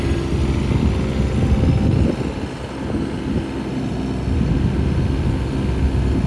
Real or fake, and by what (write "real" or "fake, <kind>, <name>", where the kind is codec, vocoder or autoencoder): real